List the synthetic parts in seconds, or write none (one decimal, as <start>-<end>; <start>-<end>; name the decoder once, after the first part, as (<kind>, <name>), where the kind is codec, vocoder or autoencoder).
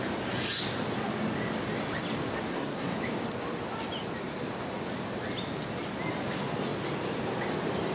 2.5-3.0 (codec, SNAC)